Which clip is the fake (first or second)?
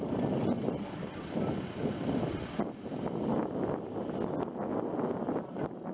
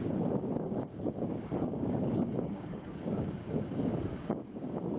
second